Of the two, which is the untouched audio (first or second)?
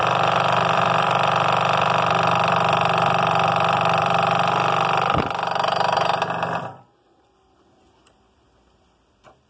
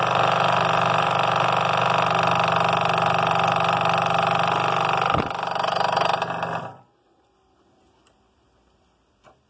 second